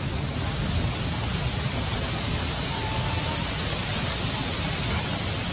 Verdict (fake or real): real